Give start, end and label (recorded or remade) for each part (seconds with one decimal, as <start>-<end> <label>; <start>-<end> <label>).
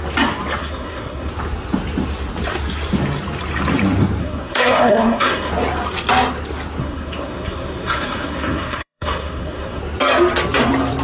0.0-0.6 recorded; 0.6-1.3 remade; 1.3-4.2 recorded; 4.2-5.5 remade; 5.5-6.8 recorded; 6.8-9.8 remade; 9.8-11.0 recorded